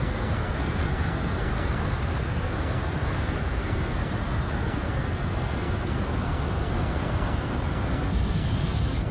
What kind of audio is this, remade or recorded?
remade